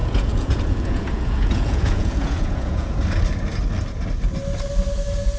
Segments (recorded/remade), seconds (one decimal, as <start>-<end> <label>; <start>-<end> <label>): 0.0-2.9 remade; 2.9-5.4 recorded